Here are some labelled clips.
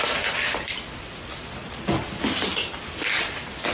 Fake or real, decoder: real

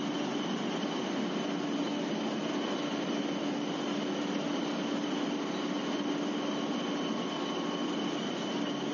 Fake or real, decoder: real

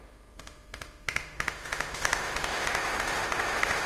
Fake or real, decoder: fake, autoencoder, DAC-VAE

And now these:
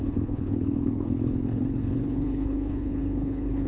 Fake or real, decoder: fake, codec, HILCodec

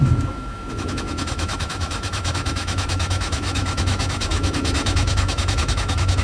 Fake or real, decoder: fake, autoencoder, DAC-VAE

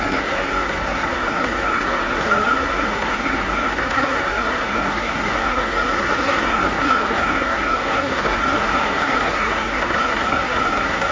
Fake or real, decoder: fake, codec, SNAC